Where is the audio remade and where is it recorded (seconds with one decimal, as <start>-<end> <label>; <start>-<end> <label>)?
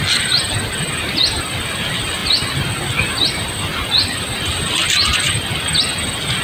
0.0-6.4 recorded